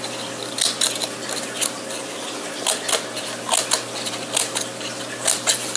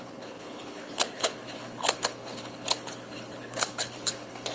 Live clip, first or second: first